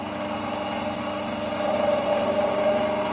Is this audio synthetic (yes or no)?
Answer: no